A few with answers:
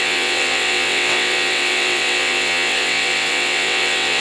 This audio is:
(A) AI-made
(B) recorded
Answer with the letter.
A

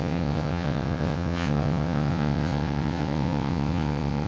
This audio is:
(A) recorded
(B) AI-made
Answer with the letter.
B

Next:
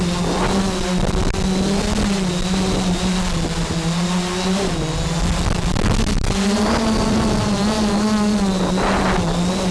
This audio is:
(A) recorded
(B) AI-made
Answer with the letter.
A